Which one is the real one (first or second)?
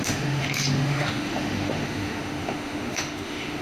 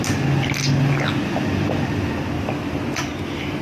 second